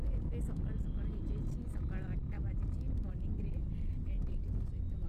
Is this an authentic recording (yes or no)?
yes